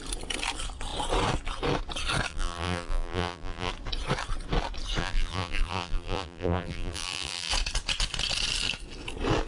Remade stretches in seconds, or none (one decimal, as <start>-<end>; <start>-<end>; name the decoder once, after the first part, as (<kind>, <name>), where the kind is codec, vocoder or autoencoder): 2.3-3.7 (vocoder, BigVGAN v2); 5.0-7.5